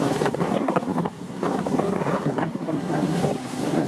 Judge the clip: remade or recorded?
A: remade